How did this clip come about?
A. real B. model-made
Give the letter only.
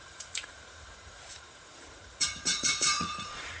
B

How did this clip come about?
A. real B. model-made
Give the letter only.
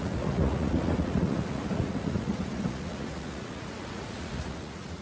B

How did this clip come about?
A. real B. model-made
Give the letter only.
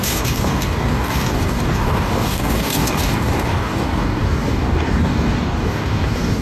B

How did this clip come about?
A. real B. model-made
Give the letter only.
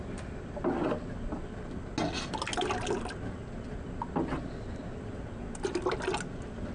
A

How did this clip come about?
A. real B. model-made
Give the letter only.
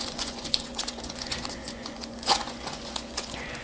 B